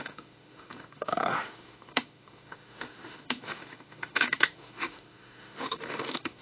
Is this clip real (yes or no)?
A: no